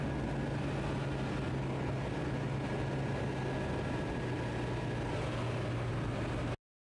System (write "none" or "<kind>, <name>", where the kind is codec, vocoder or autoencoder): none